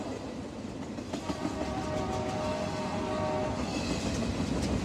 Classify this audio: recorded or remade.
recorded